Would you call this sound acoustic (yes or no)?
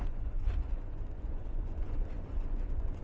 no